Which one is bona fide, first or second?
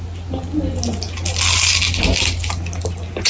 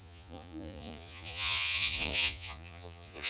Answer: first